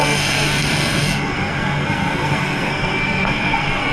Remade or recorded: remade